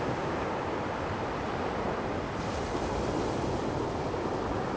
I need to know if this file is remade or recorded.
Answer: recorded